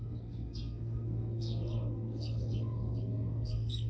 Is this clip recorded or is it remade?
remade